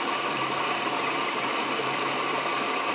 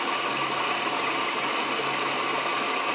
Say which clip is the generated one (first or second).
first